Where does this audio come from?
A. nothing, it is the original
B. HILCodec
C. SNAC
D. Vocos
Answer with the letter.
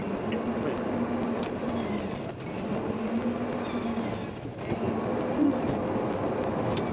A